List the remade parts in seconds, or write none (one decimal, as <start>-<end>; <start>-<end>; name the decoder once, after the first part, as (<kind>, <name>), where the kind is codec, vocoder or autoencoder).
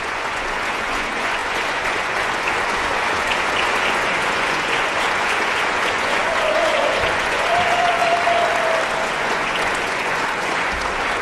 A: 0.0-8.0 (vocoder, Vocos); 8.9-11.2